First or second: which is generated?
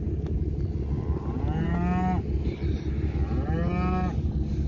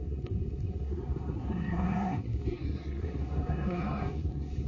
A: second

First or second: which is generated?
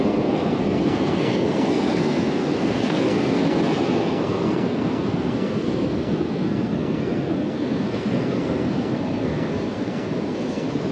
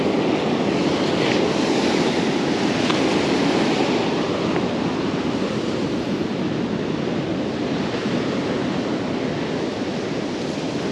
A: first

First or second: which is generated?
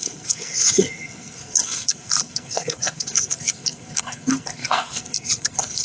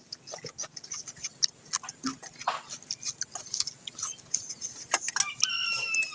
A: first